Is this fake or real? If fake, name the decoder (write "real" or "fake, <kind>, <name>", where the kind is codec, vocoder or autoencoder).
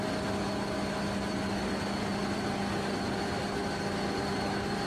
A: real